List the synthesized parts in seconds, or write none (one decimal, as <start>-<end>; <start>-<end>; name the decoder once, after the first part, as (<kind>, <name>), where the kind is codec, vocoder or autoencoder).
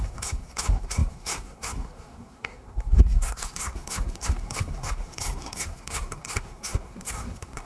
0.0-7.7 (codec, SNAC)